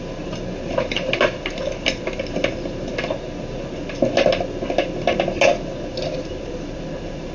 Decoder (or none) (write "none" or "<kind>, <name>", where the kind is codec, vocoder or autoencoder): none